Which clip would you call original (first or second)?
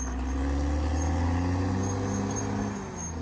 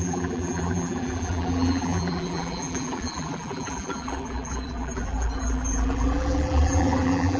first